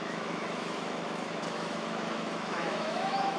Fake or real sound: fake